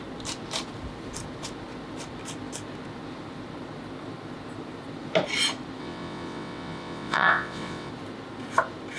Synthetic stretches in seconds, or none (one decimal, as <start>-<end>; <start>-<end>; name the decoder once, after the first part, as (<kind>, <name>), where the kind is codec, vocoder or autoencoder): 5.8-7.9 (vocoder, WaveNeXt)